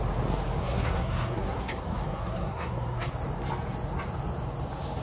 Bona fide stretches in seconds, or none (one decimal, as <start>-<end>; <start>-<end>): 0.0-0.6; 3.1-5.0

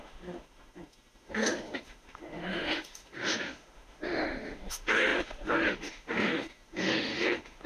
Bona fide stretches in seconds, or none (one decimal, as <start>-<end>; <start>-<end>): none

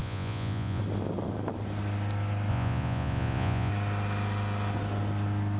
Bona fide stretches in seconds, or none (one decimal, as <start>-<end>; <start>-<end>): 0.8-2.5; 3.7-5.6

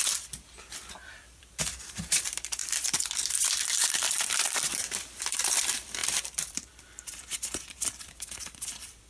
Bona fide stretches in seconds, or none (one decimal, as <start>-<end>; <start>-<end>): none

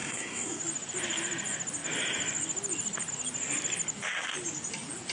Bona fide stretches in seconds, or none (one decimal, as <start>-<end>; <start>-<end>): 0.6-5.1

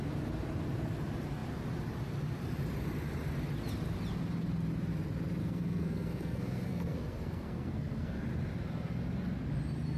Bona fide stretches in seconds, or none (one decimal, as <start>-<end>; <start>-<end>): 0.0-5.4; 8.2-10.0

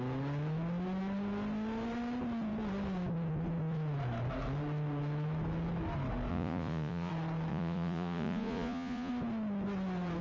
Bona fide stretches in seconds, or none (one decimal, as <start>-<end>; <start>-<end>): 0.0-6.3; 7.1-7.5; 9.1-10.2